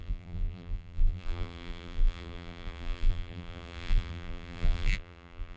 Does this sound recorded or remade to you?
remade